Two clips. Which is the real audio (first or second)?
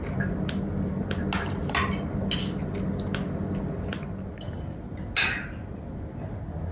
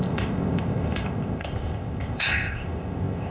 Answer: first